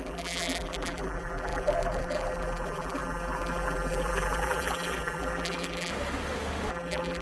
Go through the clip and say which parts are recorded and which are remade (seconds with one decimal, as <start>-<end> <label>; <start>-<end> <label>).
0.0-5.9 remade; 5.9-6.7 recorded; 6.7-7.2 remade